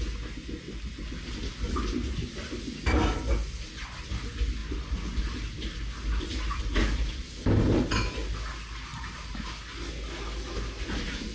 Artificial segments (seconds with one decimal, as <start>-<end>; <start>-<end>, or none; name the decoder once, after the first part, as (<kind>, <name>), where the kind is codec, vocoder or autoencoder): 8.9-9.4 (vocoder, BigVGAN v2)